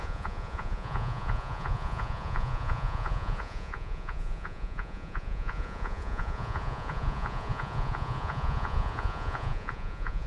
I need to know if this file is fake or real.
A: fake